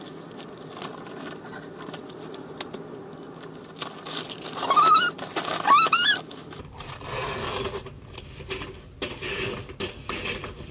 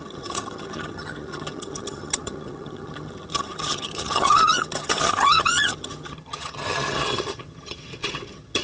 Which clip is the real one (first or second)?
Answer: first